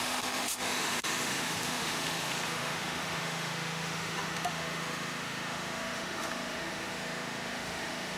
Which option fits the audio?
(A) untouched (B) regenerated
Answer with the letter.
B